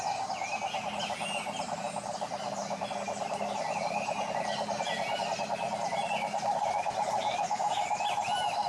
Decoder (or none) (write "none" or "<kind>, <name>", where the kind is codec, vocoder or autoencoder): none